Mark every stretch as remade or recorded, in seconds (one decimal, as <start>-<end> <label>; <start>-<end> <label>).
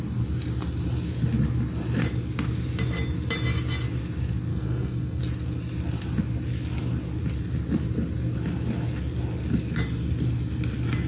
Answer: 0.0-4.5 recorded; 4.5-5.2 remade; 5.2-11.1 recorded